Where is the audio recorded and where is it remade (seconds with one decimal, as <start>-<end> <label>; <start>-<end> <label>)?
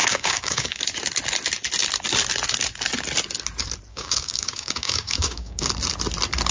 0.0-0.8 remade; 0.8-3.9 recorded; 3.9-5.7 remade; 5.7-6.5 recorded